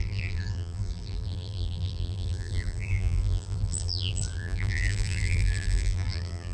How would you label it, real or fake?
fake